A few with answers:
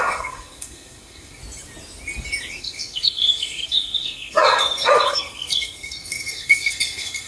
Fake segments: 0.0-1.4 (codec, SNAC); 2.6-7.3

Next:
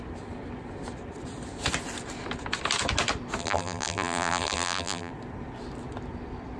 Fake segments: 3.4-5.1 (vocoder, BigVGAN v2)

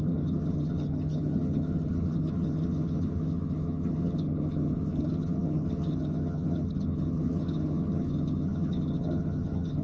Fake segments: 0.0-9.8 (vocoder, HiFi-GAN)

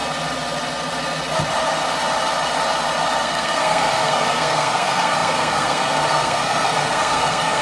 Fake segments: 3.2-7.6 (codec, SNAC)

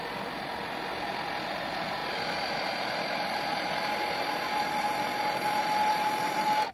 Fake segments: none

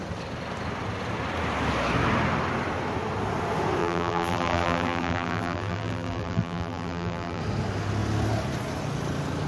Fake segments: 3.8-7.4 (vocoder, BigVGAN v2)